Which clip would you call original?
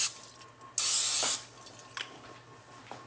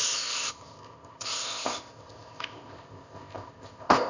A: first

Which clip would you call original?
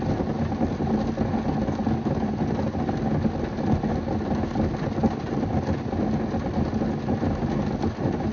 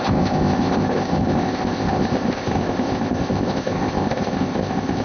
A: first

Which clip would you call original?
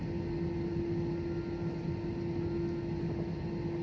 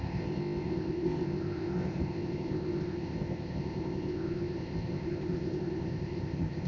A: first